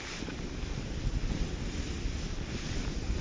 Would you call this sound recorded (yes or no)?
yes